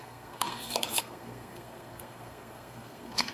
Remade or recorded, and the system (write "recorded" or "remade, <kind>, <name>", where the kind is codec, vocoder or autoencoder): remade, codec, SNAC